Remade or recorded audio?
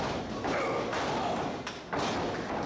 recorded